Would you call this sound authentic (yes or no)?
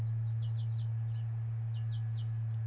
yes